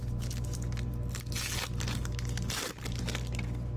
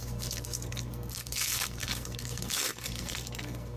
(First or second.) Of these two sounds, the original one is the first